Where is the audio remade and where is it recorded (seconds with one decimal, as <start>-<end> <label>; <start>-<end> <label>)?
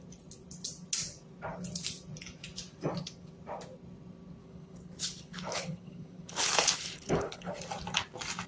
0.0-4.4 recorded; 4.4-7.5 remade; 7.5-8.5 recorded